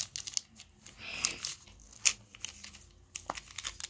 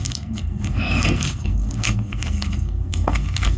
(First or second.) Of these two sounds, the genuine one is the first